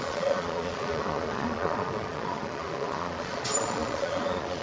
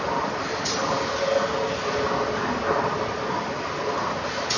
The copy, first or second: first